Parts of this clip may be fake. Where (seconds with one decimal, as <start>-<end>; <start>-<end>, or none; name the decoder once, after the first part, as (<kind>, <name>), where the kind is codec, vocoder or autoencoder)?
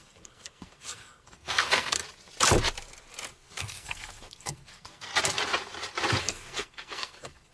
0.0-2.0 (codec, SNAC); 3.3-5.1; 6.2-7.5